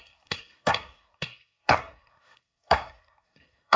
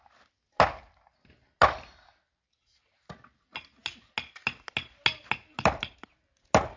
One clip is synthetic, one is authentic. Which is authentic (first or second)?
second